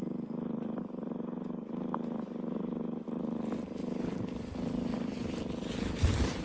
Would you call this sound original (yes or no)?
yes